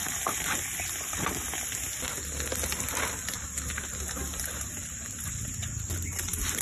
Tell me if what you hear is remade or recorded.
recorded